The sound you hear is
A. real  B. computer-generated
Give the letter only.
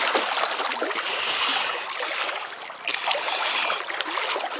A